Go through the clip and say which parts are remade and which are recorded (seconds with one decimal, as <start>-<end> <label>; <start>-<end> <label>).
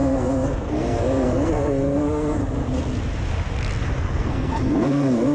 0.0-2.4 remade; 2.4-4.0 recorded; 4.0-5.3 remade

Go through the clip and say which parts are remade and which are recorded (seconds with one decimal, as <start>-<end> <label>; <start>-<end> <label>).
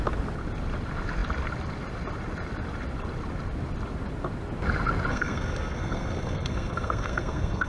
0.0-5.1 recorded; 5.1-7.7 remade